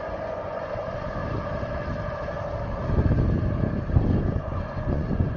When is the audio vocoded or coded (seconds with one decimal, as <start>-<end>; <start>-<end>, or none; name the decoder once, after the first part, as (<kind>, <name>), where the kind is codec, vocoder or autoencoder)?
0.0-1.2 (vocoder, Vocos); 4.4-5.4